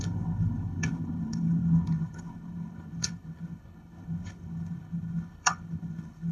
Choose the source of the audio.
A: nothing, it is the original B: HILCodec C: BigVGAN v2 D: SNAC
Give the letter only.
B